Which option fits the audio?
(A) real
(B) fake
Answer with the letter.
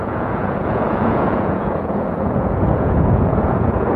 B